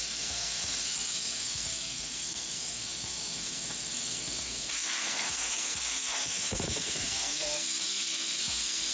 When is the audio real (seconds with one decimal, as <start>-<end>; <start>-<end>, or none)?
none